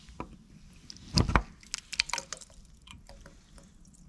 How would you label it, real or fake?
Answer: real